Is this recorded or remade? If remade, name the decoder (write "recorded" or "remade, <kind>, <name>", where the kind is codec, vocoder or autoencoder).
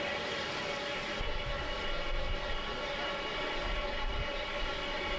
recorded